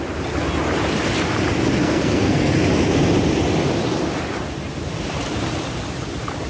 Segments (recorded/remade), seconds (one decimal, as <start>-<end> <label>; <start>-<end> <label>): 0.0-1.8 recorded; 1.8-2.5 remade; 2.5-6.5 recorded